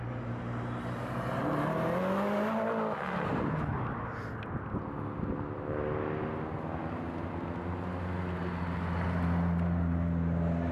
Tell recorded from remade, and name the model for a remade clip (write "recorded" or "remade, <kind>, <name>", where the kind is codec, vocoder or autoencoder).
recorded